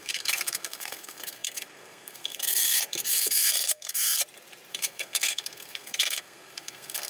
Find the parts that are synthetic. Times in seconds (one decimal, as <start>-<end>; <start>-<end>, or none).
0.0-4.2; 4.7-7.1

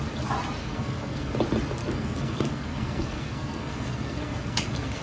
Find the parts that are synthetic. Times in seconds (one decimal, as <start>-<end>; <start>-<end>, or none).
0.6-1.3; 1.8-5.0